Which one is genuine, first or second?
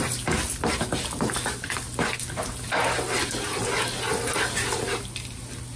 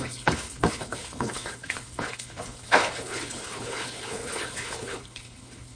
first